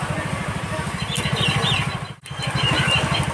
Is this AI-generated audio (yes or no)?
yes